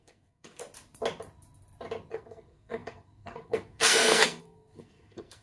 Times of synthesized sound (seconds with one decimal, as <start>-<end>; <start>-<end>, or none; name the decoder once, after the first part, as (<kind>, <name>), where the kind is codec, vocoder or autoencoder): 0.0-0.6 (codec, SNAC); 2.1-5.4